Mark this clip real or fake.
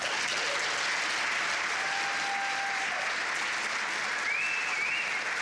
real